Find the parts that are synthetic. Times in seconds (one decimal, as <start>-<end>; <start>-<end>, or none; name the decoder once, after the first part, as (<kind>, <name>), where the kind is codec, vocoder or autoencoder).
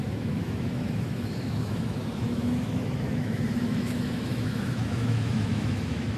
0.0-6.2 (autoencoder, DAC-VAE)